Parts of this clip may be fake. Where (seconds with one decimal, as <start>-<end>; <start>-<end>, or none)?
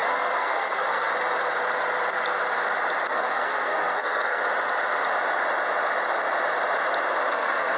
0.0-1.1; 3.1-4.4; 7.3-7.8